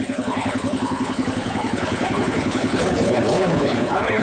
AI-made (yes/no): yes